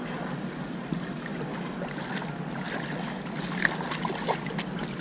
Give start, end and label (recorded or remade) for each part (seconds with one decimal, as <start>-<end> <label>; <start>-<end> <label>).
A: 0.0-5.0 recorded